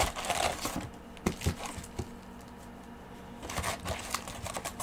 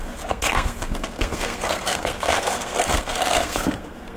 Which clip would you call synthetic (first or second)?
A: second